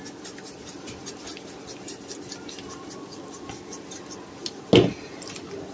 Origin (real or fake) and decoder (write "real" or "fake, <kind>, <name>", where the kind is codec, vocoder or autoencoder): real